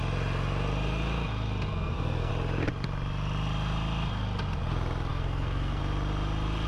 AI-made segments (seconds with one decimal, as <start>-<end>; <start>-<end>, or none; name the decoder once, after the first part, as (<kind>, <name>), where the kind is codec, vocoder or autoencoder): 1.7-2.3 (codec, SNAC); 5.1-5.8